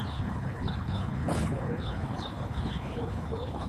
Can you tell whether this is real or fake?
fake